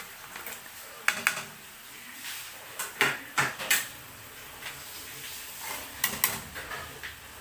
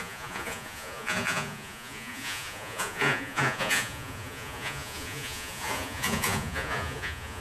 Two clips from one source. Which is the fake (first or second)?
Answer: second